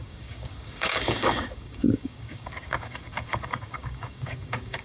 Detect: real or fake fake